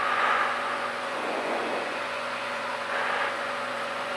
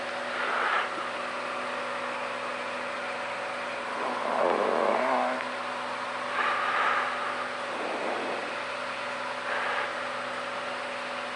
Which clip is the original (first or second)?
second